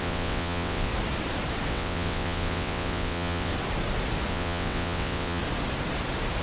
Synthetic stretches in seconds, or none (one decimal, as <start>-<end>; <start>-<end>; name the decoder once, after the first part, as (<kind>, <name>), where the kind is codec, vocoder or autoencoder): 0.0-0.9 (vocoder, WaveNeXt); 1.7-3.5; 4.3-5.4